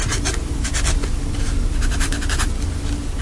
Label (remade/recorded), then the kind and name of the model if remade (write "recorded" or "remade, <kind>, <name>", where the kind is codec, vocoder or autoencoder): recorded